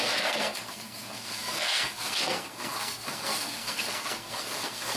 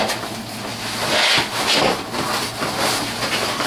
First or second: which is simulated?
first